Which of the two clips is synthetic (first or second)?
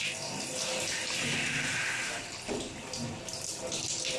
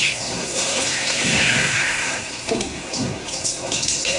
second